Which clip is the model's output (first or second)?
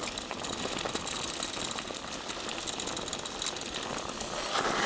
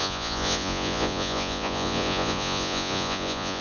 second